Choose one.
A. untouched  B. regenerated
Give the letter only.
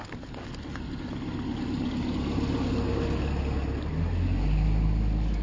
A